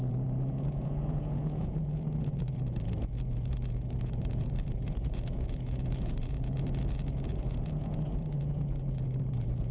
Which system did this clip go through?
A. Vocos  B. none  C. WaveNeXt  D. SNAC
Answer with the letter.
A